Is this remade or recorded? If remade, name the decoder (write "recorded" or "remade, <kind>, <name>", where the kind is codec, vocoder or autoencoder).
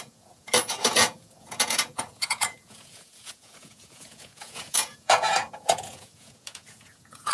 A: remade, vocoder, Vocos